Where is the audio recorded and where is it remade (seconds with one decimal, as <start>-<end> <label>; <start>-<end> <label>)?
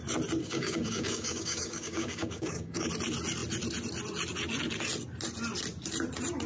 0.0-0.4 recorded; 0.4-2.9 remade; 2.9-6.5 recorded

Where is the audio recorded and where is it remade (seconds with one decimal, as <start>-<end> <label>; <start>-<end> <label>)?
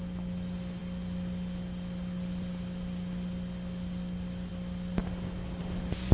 0.0-6.1 recorded